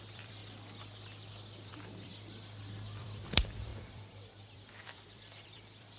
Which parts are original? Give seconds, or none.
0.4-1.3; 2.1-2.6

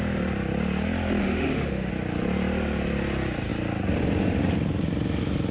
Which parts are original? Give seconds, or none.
0.0-1.2; 1.9-5.5

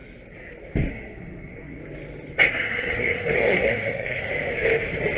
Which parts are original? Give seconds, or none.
0.0-0.9; 1.8-2.5; 4.3-5.2

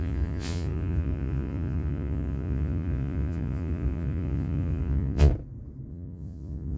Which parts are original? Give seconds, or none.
5.3-5.9

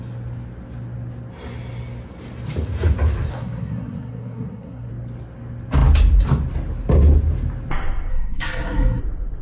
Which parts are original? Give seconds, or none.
0.0-3.3; 4.9-8.1; 9.0-9.4

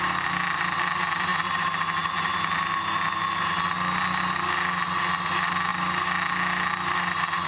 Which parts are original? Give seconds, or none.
0.0-7.5

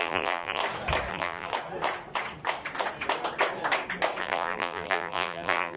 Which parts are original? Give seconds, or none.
0.6-1.1; 1.5-4.2